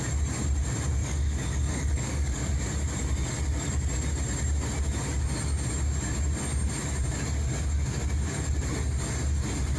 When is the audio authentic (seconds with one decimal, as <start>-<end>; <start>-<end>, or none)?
0.0-1.0; 2.5-9.8